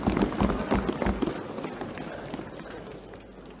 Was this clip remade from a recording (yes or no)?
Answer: no